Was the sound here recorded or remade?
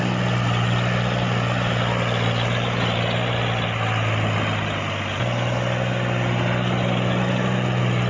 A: recorded